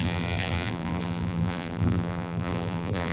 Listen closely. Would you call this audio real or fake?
fake